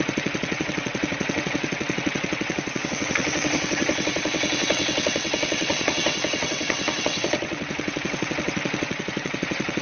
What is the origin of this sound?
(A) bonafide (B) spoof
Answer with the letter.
B